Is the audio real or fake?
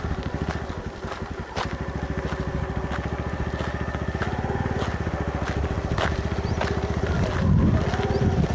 real